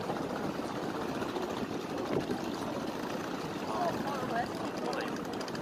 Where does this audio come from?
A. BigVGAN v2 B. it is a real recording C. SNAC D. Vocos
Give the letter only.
B